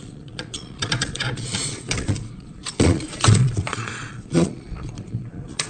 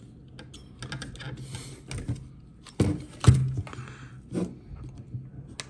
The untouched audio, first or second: second